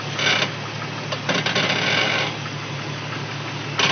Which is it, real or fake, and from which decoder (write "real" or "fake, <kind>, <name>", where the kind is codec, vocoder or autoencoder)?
real